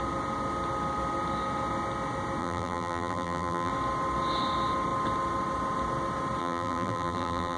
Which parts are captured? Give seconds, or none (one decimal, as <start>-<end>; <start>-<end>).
0.0-2.4; 3.7-6.4